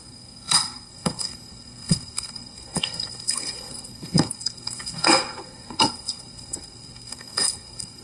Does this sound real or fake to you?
fake